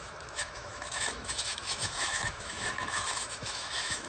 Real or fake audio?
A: fake